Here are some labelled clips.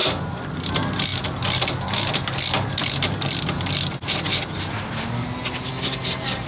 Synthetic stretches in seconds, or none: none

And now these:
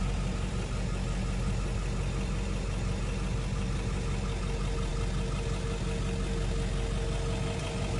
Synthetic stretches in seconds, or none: none

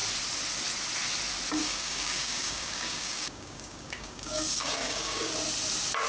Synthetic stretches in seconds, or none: 1.6-5.3

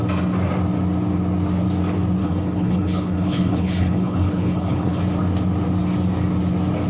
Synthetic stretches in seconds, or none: 2.2-5.0

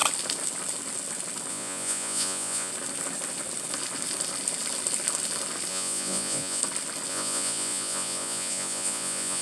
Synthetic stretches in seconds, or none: 1.5-2.7; 5.7-6.6; 7.1-9.4